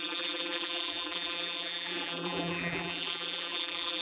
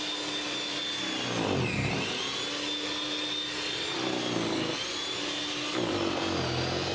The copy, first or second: first